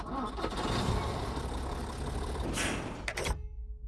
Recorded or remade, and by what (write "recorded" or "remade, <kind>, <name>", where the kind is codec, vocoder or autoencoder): recorded